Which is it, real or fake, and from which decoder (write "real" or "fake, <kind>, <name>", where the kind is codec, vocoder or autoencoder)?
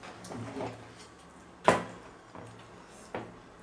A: real